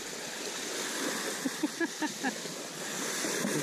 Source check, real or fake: real